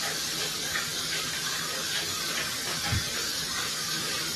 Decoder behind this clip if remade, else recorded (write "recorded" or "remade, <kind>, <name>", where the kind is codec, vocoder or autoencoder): remade, codec, DAC